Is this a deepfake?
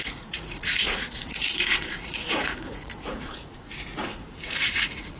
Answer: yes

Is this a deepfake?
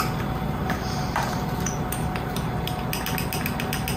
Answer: no